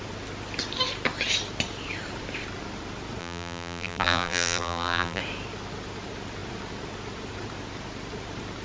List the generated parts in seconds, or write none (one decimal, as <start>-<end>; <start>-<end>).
3.2-5.2